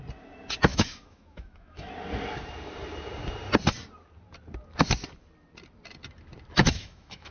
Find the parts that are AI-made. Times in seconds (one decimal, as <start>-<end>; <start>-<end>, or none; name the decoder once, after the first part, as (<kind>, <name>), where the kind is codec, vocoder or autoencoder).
0.7-1.9 (autoencoder, DAC-VAE); 6.6-7.3

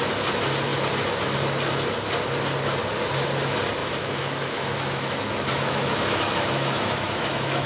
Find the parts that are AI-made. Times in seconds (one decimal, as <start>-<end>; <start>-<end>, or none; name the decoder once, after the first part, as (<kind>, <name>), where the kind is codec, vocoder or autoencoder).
3.8-7.7 (autoencoder, DAC-VAE)

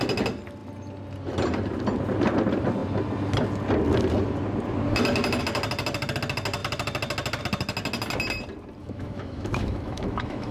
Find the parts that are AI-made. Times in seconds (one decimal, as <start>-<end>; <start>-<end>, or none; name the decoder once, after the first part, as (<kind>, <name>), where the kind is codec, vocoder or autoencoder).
8.8-10.5 (autoencoder, DAC-VAE)